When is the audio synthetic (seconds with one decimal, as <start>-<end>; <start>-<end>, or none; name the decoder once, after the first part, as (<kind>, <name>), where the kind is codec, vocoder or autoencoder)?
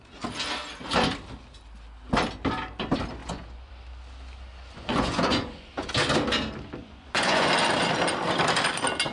3.2-3.7 (vocoder, Vocos); 4.5-5.9; 6.8-7.5